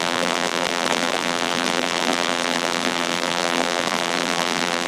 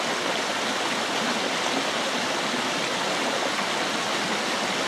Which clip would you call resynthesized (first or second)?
first